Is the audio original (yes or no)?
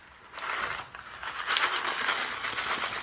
yes